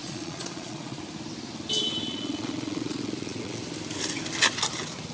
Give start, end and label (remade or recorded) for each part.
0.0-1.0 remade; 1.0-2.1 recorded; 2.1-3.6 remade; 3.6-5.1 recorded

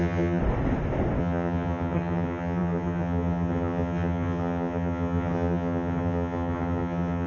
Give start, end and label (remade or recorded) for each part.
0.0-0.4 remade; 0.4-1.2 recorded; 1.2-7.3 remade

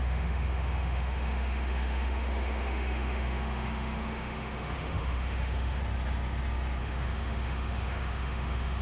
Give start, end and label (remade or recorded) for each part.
0.0-5.8 remade; 5.8-6.8 recorded; 6.8-8.8 remade

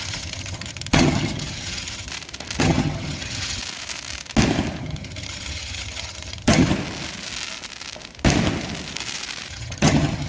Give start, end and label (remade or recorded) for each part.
0.0-2.1 remade; 2.1-2.6 recorded; 2.6-3.6 remade; 3.6-4.8 recorded; 4.8-6.7 remade; 6.7-9.5 recorded; 9.5-10.3 remade

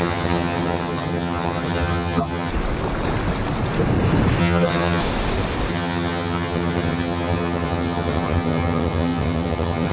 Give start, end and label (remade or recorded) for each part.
0.0-2.5 remade; 2.5-4.4 recorded; 4.4-5.0 remade; 5.0-5.7 recorded; 5.7-9.9 remade

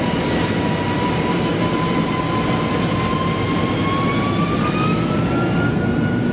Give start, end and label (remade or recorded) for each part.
0.0-4.6 recorded; 4.6-5.2 remade; 5.2-6.3 recorded

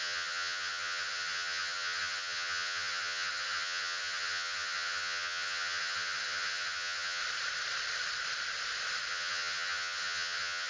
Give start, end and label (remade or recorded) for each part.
0.0-7.2 remade; 7.2-9.1 recorded; 9.1-10.7 remade